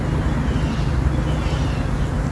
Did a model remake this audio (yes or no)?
no